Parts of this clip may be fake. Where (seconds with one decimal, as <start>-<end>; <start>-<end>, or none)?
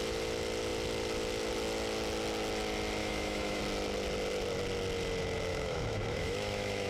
3.0-3.6; 5.5-6.9